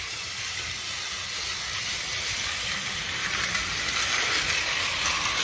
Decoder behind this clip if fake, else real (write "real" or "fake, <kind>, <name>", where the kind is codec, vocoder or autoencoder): real